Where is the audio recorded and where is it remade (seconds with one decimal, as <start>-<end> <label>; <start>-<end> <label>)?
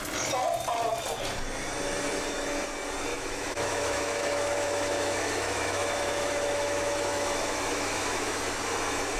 0.0-3.1 recorded; 3.1-8.4 remade; 8.4-9.2 recorded